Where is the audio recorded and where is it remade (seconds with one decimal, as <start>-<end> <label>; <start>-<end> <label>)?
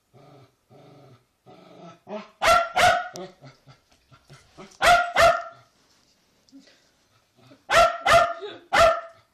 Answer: 0.0-9.3 recorded